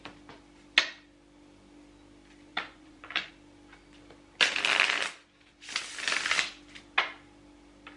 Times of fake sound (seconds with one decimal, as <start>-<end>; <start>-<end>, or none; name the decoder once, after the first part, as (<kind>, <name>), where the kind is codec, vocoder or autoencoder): 2.5-3.3 (vocoder, Vocos)